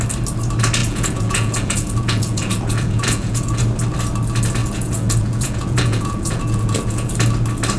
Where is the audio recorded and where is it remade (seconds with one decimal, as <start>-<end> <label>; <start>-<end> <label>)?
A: 0.0-0.8 recorded; 0.8-3.6 remade; 3.6-4.6 recorded; 4.6-7.1 remade; 7.1-7.8 recorded